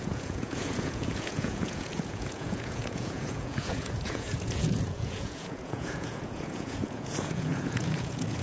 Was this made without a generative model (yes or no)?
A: no